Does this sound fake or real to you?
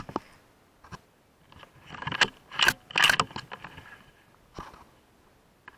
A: real